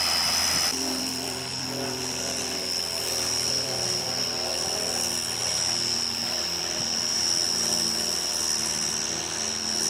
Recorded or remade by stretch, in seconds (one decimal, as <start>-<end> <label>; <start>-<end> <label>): 0.0-0.7 recorded; 0.7-4.2 remade; 4.2-5.4 recorded; 5.4-8.3 remade; 8.3-9.9 recorded